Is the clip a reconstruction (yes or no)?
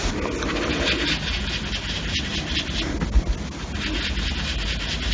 no